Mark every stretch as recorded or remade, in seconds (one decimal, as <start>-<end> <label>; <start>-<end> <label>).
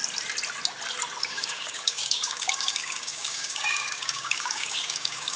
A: 0.0-1.2 recorded; 1.2-5.4 remade